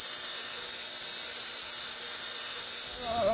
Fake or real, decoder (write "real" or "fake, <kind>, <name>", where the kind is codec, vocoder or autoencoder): real